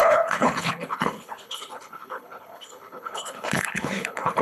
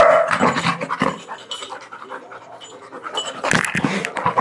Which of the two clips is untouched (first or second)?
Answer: second